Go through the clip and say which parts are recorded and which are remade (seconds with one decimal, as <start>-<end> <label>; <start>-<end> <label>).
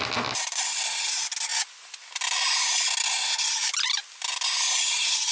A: 0.0-5.3 recorded